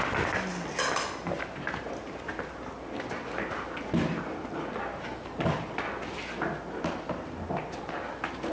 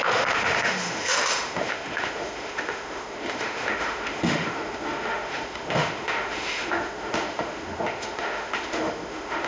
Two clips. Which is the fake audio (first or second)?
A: second